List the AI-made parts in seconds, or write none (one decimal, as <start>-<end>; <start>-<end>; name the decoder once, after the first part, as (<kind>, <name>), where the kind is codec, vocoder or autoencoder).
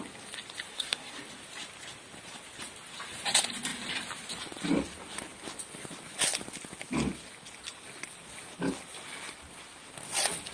0.7-1.2 (codec, SNAC)